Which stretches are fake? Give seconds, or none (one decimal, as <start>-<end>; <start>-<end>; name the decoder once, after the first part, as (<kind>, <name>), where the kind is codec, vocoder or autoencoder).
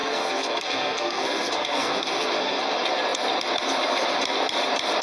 0.0-2.6 (codec, SNAC)